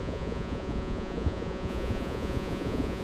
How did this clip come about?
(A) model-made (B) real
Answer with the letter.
A